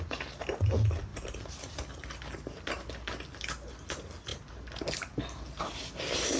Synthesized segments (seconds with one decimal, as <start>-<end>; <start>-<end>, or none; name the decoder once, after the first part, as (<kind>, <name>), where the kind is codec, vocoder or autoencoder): none